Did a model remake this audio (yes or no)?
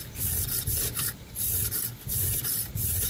yes